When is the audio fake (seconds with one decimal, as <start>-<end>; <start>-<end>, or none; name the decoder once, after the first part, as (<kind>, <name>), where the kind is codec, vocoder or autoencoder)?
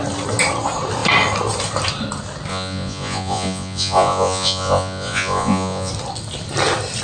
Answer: 2.5-5.9 (vocoder, Vocos)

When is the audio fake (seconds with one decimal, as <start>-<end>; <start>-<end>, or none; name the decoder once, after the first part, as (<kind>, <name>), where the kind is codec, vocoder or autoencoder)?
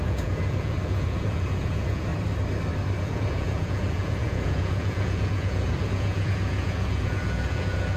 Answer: 0.0-2.1 (vocoder, Vocos); 3.0-8.0